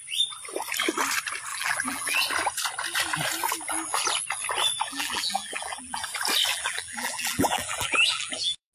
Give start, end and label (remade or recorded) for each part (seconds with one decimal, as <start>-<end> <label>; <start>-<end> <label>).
0.0-1.5 recorded; 1.5-2.2 remade; 2.2-4.9 recorded; 4.9-6.0 remade; 6.0-6.5 recorded; 6.5-8.7 remade